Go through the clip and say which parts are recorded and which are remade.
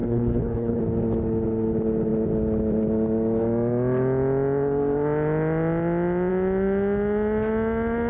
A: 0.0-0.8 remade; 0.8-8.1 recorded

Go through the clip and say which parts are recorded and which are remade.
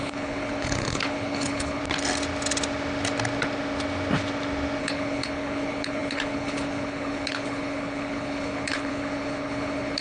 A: 0.0-1.8 remade; 1.8-4.8 recorded; 4.8-10.0 remade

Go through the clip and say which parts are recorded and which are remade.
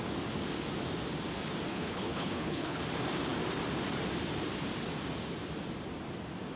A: 0.0-1.7 recorded; 1.7-2.8 remade; 2.8-6.6 recorded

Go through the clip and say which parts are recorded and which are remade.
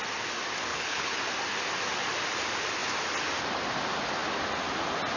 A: 0.0-0.7 recorded; 0.7-1.2 remade; 1.2-5.2 recorded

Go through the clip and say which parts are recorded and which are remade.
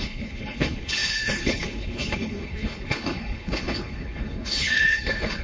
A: 0.0-5.4 remade